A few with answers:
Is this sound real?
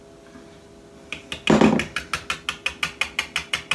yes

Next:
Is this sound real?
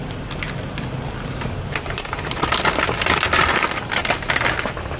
yes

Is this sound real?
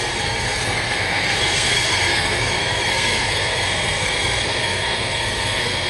no